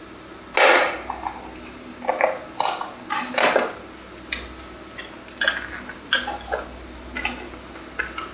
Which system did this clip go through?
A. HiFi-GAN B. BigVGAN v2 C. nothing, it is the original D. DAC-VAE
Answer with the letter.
C